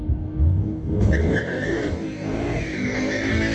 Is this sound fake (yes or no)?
yes